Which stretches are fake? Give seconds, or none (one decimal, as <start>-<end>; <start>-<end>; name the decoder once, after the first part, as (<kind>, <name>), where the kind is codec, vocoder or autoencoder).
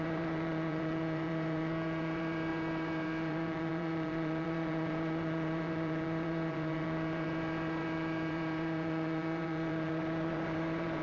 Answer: 0.0-11.0 (vocoder, BigVGAN v2)